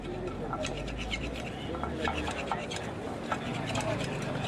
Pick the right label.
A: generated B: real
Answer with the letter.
B